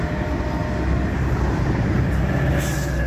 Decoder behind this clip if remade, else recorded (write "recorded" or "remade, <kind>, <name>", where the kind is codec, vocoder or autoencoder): recorded